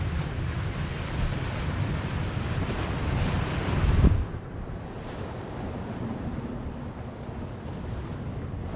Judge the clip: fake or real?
real